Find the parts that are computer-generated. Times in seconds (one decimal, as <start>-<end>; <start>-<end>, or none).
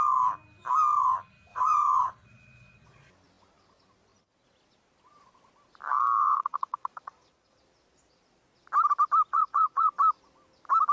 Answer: 1.5-3.1; 6.2-7.6; 9.3-9.9